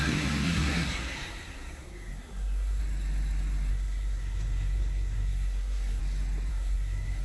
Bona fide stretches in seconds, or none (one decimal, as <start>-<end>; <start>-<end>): 2.8-3.7; 6.0-6.5